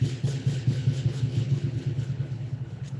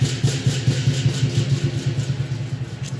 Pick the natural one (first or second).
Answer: second